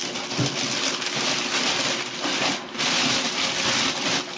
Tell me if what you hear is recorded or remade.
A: recorded